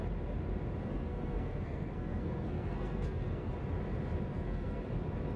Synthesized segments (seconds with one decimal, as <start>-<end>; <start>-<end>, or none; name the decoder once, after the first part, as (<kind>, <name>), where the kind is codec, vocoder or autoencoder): 0.9-3.5 (codec, SNAC); 4.3-4.8